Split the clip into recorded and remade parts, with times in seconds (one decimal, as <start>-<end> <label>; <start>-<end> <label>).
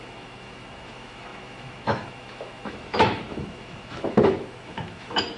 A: 0.0-5.4 remade